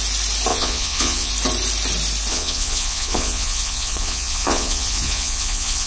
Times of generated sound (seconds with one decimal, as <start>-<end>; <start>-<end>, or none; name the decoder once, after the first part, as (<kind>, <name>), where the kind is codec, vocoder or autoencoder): 0.5-1.3 (vocoder, Vocos); 2.3-5.9